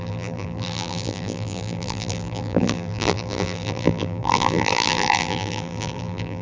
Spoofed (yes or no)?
yes